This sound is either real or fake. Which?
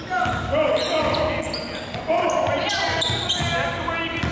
real